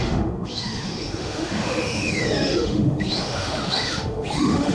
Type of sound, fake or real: fake